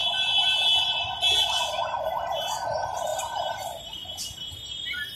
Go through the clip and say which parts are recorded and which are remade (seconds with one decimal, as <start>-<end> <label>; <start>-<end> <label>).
0.0-5.1 recorded